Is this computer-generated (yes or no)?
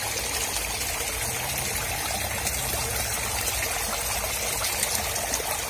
no